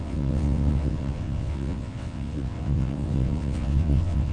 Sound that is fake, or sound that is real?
fake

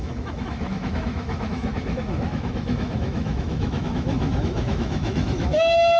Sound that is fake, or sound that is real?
fake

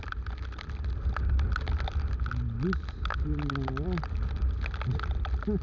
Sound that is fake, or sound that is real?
real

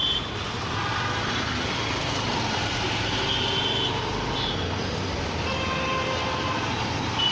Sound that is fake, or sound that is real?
real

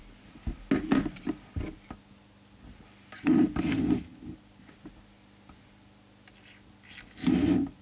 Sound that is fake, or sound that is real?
real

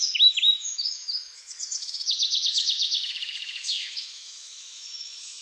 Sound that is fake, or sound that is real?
fake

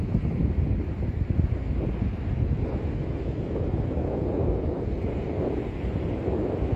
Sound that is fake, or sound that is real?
real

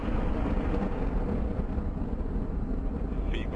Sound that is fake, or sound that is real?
real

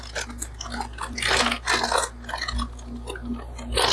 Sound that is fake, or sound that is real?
real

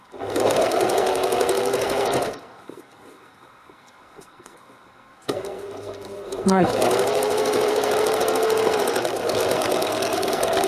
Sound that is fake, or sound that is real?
fake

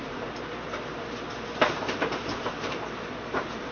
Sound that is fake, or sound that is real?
fake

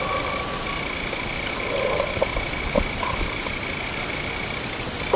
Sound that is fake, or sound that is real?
real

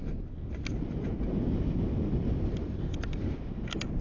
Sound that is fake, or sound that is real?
real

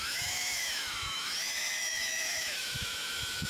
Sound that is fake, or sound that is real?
fake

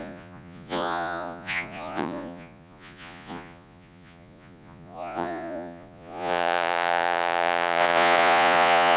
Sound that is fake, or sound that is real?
fake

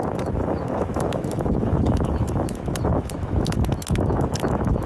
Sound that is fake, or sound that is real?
fake